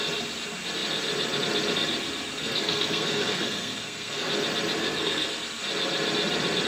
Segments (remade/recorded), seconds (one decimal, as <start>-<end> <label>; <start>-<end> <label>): 0.0-2.4 recorded; 2.4-4.3 remade; 4.3-4.8 recorded; 4.8-5.3 remade; 5.3-6.7 recorded